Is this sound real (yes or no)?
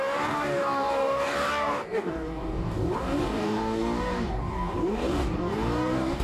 no